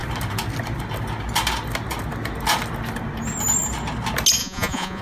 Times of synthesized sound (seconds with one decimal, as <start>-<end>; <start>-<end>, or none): 4.4-5.0